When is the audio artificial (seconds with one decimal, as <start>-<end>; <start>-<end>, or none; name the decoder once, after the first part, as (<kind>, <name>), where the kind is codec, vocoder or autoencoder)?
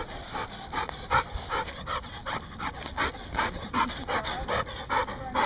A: none